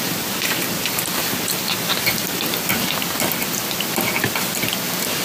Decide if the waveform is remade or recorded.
recorded